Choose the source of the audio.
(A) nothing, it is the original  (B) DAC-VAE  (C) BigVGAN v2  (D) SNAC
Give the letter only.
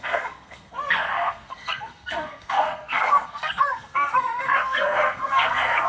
D